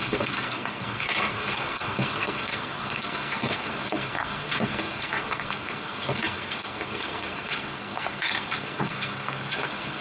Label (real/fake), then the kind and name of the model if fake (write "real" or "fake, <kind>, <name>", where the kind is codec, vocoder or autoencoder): fake, codec, SNAC